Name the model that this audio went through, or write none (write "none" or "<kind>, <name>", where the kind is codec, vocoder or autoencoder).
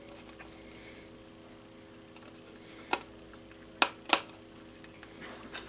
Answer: none